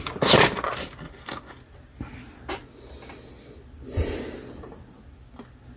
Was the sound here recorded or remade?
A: recorded